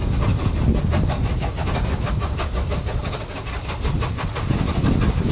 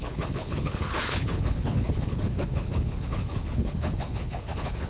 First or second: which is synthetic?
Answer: second